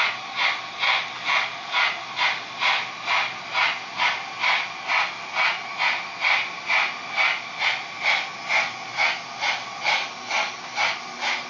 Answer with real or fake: real